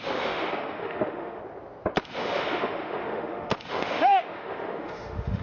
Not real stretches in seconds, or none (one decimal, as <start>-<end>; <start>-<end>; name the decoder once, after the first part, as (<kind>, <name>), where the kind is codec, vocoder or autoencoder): 0.0-1.4 (autoencoder, DAC-VAE); 2.0-5.4